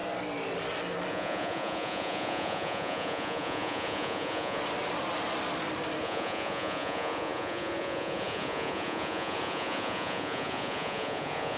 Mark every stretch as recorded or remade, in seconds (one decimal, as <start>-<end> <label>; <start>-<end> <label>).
0.0-1.1 recorded; 1.1-4.6 remade; 4.6-6.0 recorded; 6.0-11.6 remade